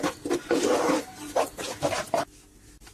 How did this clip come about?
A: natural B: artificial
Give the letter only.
A